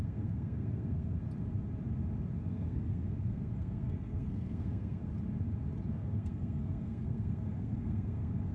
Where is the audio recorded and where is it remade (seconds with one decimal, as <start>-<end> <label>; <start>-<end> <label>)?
0.0-1.2 remade; 1.2-2.5 recorded; 2.5-5.0 remade; 5.0-5.9 recorded; 5.9-8.5 remade